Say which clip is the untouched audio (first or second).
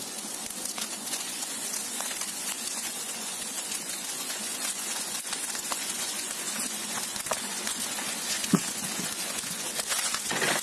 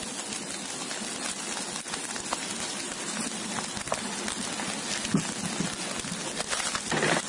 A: second